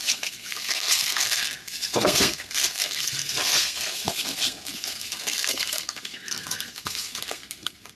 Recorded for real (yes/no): no